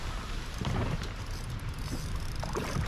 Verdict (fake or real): fake